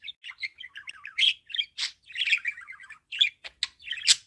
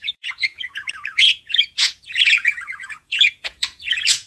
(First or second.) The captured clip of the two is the first